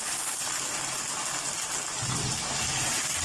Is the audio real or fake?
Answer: real